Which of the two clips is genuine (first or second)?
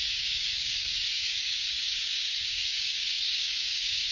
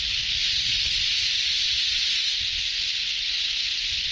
second